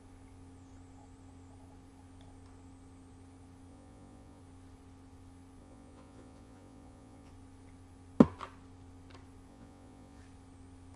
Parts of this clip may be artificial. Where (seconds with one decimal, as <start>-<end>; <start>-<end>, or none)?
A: 3.7-4.4; 5.6-7.3; 9.5-10.2